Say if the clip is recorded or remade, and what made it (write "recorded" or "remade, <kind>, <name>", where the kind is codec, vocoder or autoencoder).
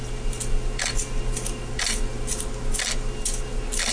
recorded